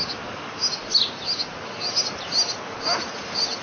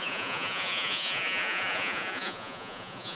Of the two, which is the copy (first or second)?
second